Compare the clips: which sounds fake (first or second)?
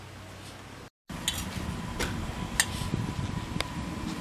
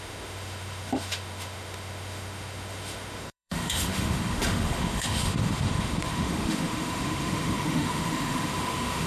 second